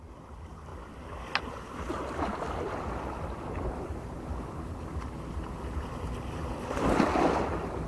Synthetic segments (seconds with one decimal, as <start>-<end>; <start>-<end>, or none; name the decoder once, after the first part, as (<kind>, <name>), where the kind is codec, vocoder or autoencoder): none